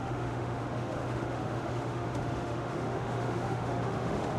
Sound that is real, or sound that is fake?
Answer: fake